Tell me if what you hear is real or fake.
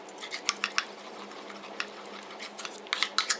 real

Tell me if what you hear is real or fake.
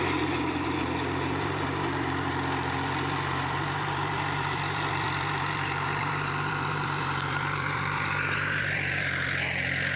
fake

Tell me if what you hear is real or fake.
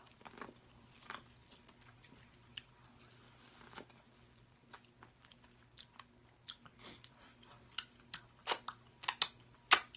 real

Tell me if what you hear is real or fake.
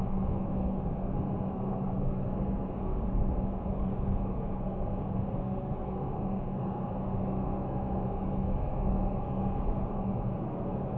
fake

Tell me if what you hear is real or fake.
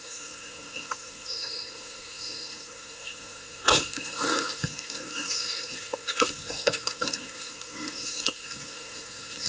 fake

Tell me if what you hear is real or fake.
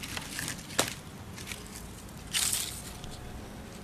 real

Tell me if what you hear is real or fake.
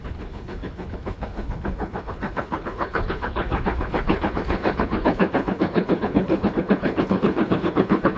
fake